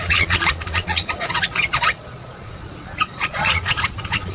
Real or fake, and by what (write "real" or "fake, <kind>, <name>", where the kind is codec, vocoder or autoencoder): fake, vocoder, Vocos